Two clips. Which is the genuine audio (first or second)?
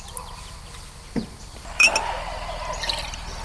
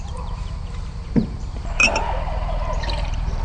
first